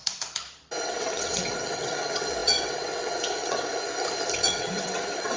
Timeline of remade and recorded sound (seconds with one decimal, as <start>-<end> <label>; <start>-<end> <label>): 0.0-0.8 recorded; 0.8-3.7 remade; 3.7-4.3 recorded; 4.3-5.4 remade